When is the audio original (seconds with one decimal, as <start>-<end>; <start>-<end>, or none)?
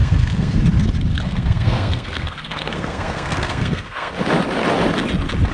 0.6-1.1; 4.1-5.5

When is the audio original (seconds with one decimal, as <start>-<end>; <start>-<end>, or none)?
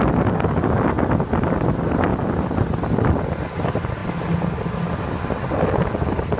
0.0-6.4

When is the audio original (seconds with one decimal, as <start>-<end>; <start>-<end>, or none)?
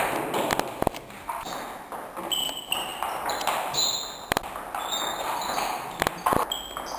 0.0-7.0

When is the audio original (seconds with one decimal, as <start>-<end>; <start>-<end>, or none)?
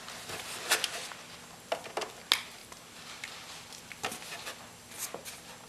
0.0-2.6; 4.6-5.7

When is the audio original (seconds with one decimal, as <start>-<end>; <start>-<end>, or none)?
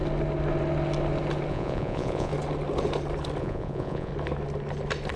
0.0-1.5; 2.3-3.4; 4.1-5.2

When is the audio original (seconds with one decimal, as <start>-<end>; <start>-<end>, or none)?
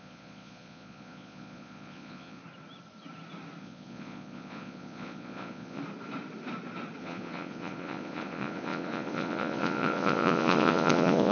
2.4-3.6; 5.8-7.0